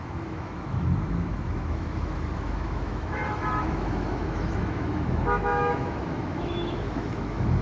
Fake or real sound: fake